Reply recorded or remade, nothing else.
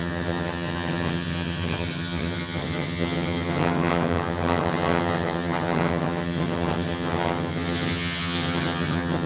remade